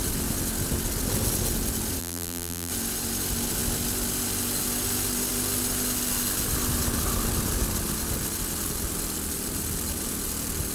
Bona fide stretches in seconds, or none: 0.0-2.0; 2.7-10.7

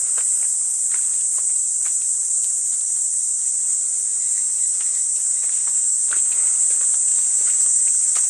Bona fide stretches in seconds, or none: 3.7-4.6; 5.6-6.2; 7.1-7.6

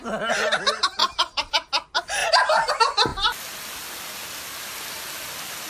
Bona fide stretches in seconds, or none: 0.0-1.0; 1.5-2.2; 2.7-5.7

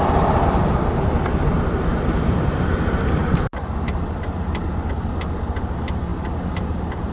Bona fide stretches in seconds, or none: 0.0-1.9; 2.7-3.2; 4.7-6.1

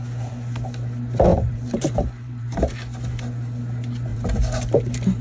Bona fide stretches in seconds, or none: 0.0-1.3; 2.6-4.1

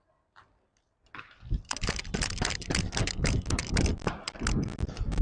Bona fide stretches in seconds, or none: 0.0-5.2

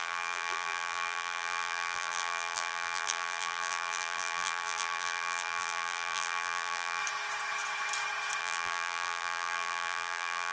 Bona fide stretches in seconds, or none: 7.0-8.4

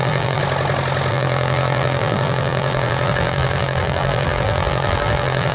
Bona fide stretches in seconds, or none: 0.4-1.1